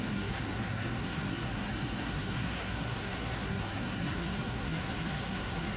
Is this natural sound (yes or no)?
no